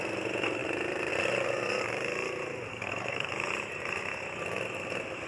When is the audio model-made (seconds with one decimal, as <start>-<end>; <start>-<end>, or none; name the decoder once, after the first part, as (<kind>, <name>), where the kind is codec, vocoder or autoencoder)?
2.7-3.3 (codec, SNAC)